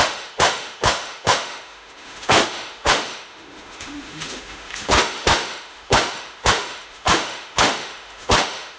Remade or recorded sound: remade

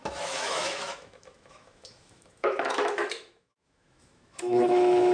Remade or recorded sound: remade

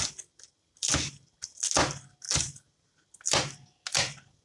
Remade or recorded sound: recorded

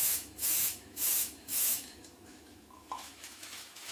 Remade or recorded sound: remade